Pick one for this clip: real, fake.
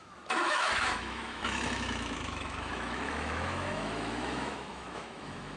fake